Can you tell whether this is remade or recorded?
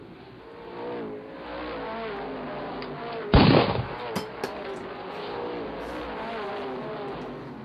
recorded